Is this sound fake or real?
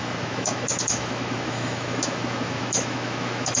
fake